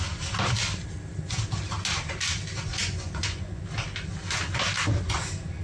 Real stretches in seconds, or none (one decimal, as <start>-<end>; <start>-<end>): 0.0-2.7; 3.6-5.6